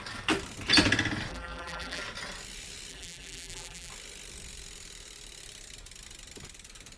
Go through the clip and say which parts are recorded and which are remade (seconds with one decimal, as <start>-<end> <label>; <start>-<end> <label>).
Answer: 0.0-1.3 recorded; 1.3-2.0 remade; 2.0-2.9 recorded; 2.9-3.9 remade; 3.9-7.0 recorded

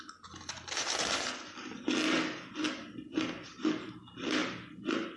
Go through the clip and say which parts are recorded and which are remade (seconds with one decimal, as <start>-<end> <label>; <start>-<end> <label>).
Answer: 0.0-5.2 recorded

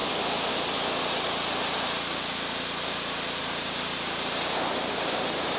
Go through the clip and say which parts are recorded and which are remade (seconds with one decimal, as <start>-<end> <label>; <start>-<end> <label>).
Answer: 0.0-3.4 recorded; 3.4-5.6 remade

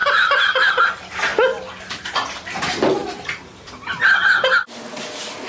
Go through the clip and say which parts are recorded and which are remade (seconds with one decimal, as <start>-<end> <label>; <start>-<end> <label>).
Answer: 0.0-0.7 remade; 0.7-3.0 recorded; 3.0-4.0 remade; 4.0-5.5 recorded

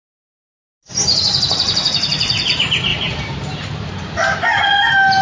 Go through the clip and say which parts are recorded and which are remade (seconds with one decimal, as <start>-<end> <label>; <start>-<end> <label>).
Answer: 0.0-2.9 recorded; 2.9-3.9 remade; 3.9-5.2 recorded

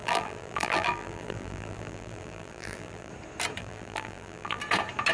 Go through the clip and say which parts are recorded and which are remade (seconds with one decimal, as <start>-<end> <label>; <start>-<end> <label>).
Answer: 0.0-3.1 remade; 3.1-3.6 recorded; 3.6-4.6 remade; 4.6-5.1 recorded

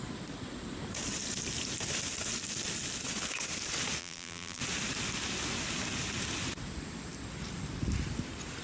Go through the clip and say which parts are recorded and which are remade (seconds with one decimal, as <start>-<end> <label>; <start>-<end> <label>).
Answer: 0.0-4.0 recorded; 4.0-4.6 remade; 4.6-8.6 recorded

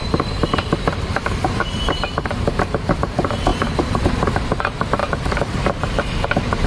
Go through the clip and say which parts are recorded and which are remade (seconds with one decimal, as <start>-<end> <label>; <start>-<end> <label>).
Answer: 0.0-6.7 remade